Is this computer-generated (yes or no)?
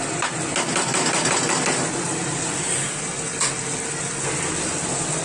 no